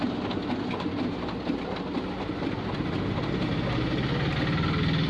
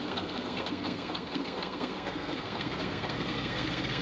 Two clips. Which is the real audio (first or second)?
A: first